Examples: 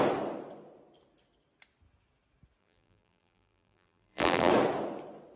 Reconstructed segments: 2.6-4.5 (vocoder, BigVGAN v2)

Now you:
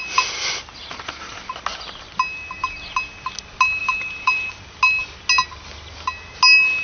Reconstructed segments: 3.8-4.5 (vocoder, BigVGAN v2)

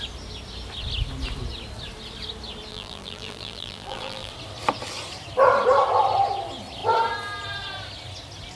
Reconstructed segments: 2.7-4.3 (vocoder, BigVGAN v2)

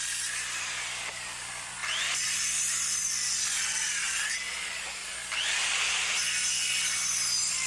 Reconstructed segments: 0.0-7.7 (vocoder, BigVGAN v2)